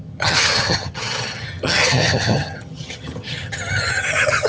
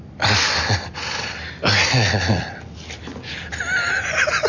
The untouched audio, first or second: second